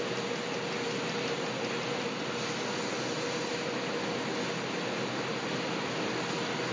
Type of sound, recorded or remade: recorded